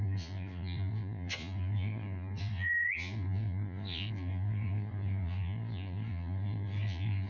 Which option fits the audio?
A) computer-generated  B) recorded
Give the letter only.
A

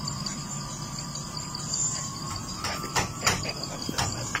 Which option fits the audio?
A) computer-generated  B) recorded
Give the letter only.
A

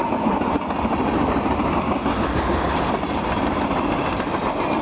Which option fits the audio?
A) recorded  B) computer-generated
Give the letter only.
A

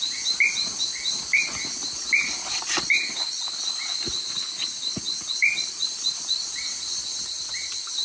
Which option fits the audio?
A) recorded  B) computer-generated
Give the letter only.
A